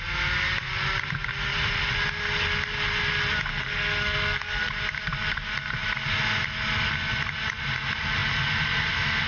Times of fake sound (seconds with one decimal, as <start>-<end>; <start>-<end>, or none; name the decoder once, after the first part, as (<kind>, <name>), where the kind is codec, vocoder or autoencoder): 3.5-4.7 (codec, SNAC)